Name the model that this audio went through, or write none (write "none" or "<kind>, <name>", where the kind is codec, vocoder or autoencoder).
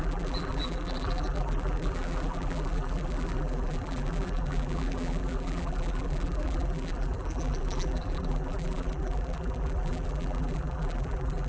vocoder, BigVGAN v2